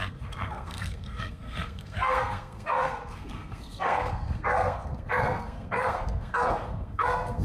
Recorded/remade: remade